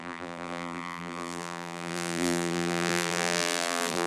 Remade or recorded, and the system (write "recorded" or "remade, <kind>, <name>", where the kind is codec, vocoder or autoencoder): remade, vocoder, BigVGAN v2